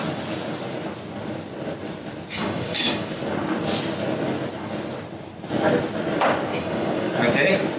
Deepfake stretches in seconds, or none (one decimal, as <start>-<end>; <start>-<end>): 2.4-3.1; 6.5-7.1